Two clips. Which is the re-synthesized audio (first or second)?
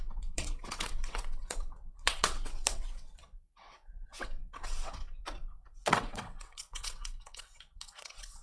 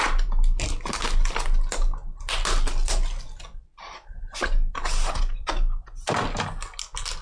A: first